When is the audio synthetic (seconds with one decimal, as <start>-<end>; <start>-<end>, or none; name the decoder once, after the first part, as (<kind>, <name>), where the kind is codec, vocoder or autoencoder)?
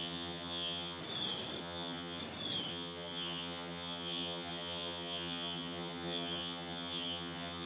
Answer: 0.0-1.0 (vocoder, HiFi-GAN); 1.6-2.2; 2.7-7.7